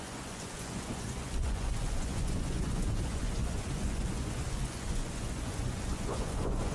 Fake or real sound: fake